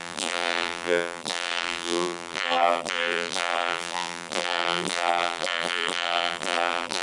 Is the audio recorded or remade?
remade